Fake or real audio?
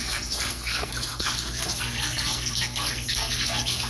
fake